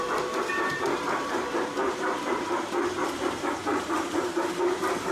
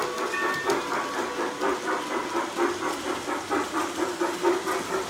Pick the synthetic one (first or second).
first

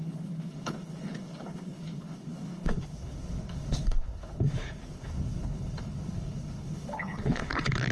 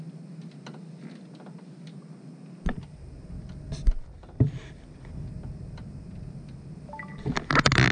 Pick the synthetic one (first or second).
first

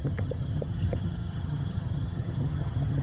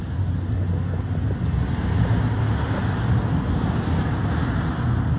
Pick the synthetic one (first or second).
first